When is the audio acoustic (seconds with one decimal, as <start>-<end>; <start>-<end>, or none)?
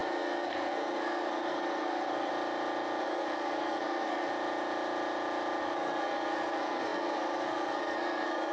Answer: 2.3-3.0; 4.3-5.6